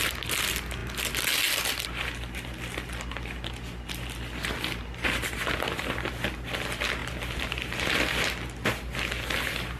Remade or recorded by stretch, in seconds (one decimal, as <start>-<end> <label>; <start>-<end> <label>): 0.0-9.8 recorded